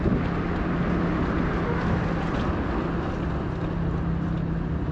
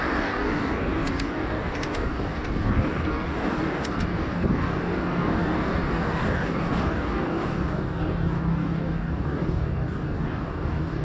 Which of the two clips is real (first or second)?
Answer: first